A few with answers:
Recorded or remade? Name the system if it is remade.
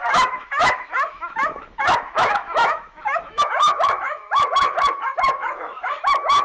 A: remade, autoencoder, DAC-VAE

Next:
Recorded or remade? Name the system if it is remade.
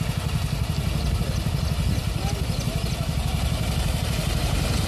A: recorded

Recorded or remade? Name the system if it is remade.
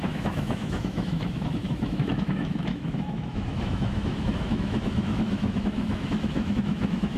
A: remade, autoencoder, DAC-VAE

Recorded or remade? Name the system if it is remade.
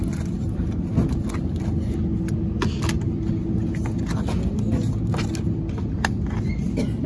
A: recorded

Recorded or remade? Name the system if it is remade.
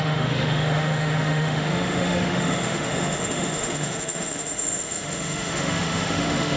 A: remade, autoencoder, DAC-VAE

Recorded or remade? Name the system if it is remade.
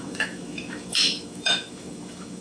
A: remade, autoencoder, DAC-VAE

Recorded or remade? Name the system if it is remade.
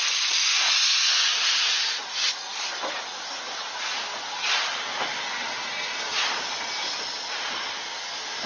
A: recorded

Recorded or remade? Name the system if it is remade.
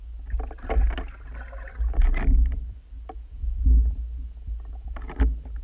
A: recorded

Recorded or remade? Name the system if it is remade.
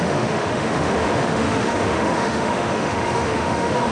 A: remade, autoencoder, DAC-VAE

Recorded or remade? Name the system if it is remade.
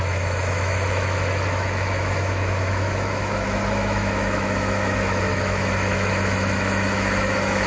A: remade, autoencoder, DAC-VAE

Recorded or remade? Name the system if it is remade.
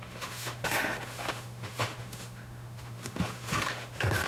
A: remade, autoencoder, DAC-VAE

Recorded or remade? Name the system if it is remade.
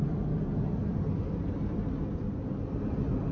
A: recorded